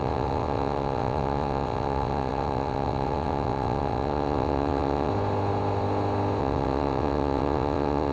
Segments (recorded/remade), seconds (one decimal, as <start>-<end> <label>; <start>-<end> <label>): 0.0-5.1 remade; 5.1-6.4 recorded; 6.4-8.1 remade